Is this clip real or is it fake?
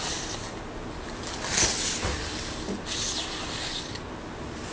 real